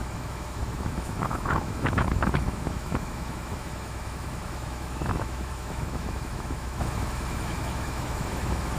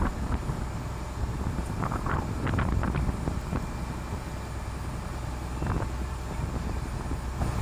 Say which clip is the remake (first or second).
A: first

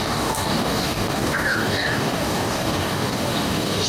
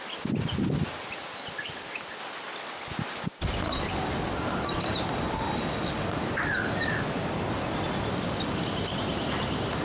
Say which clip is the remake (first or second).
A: first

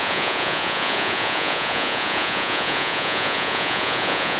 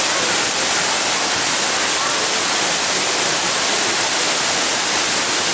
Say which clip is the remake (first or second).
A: first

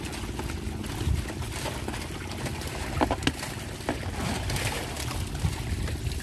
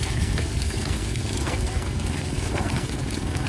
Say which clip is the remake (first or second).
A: second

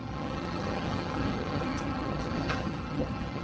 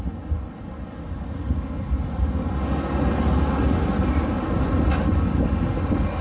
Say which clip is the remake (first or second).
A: first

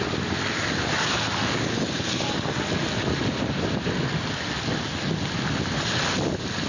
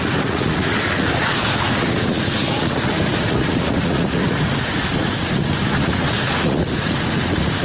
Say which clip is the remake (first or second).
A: second